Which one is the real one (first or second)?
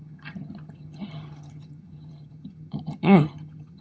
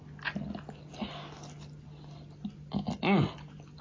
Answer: second